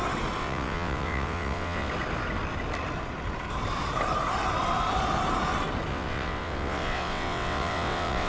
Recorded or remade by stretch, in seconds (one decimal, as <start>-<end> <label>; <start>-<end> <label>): 0.0-0.4 recorded; 0.4-1.9 remade; 1.9-5.9 recorded; 5.9-8.3 remade

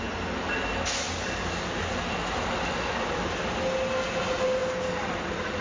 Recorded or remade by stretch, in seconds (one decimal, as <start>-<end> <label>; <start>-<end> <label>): 0.0-5.6 recorded